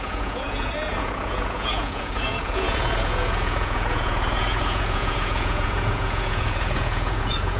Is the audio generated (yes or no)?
yes